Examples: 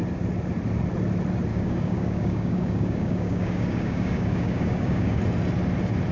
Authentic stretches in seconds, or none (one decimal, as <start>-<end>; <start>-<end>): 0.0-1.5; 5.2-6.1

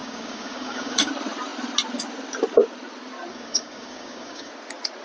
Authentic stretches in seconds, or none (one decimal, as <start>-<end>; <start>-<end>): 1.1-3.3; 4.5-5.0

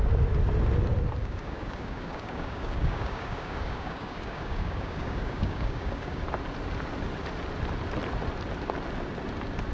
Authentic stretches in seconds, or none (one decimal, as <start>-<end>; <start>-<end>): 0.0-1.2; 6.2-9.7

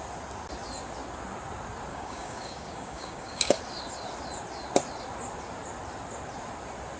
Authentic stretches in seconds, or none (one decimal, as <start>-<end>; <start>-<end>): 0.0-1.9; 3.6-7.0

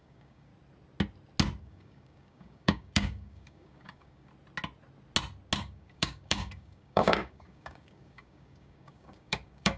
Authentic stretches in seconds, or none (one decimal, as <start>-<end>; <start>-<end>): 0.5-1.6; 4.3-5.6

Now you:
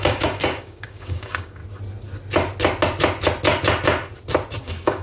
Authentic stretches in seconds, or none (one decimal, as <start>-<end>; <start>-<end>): 1.6-4.6

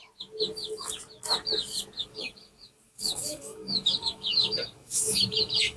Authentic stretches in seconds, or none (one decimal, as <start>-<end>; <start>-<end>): 0.0-2.0

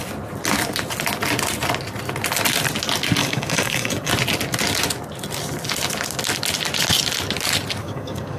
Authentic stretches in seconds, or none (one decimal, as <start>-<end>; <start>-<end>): 0.0-3.2; 4.1-7.8